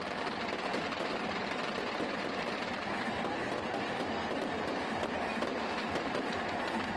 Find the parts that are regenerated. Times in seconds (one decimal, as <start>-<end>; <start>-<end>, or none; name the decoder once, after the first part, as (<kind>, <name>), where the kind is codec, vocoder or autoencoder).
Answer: 0.7-4.9 (vocoder, BigVGAN v2)